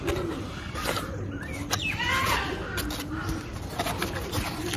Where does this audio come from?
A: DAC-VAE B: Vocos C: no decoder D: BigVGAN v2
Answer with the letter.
C